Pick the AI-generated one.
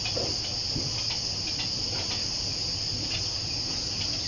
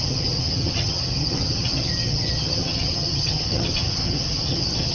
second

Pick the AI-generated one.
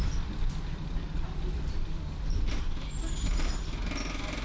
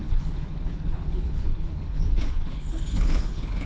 second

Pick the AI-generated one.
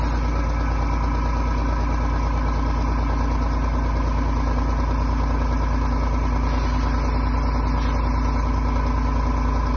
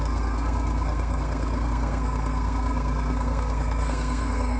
second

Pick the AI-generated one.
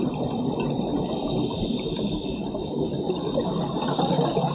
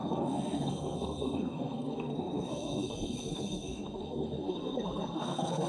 second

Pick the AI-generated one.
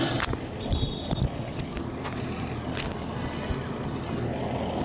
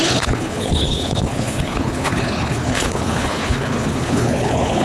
second